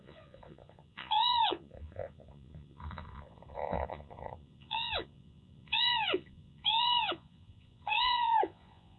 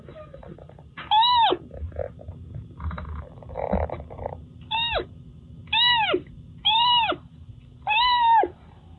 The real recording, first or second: second